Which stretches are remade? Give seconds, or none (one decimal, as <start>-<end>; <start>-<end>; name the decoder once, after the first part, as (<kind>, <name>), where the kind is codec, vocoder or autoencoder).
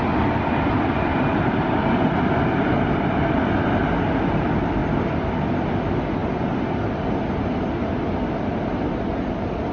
1.1-1.8 (vocoder, BigVGAN v2); 6.2-6.8